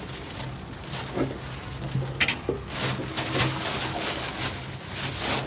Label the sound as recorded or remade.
recorded